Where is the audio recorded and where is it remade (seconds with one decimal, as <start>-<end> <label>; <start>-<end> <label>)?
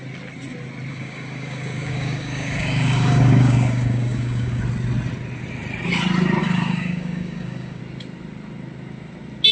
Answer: 0.0-0.9 recorded; 0.9-4.6 remade; 4.6-6.4 recorded; 6.4-7.8 remade; 7.8-9.5 recorded